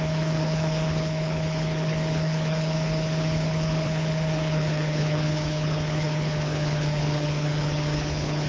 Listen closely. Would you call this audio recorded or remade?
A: remade